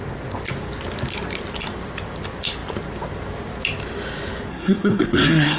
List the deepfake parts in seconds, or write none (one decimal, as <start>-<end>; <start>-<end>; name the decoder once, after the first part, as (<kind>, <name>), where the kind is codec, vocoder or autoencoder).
4.5-5.6 (codec, SNAC)